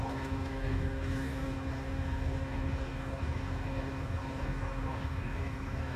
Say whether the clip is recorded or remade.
remade